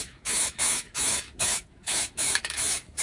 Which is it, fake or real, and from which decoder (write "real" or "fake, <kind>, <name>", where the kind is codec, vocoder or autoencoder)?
fake, autoencoder, DAC-VAE